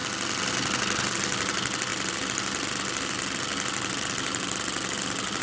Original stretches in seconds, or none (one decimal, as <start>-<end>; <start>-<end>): 0.0-5.4